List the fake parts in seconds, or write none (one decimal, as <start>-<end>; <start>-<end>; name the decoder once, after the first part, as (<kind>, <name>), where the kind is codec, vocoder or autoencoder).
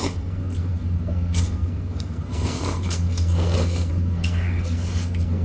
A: 0.0-5.4 (codec, SNAC)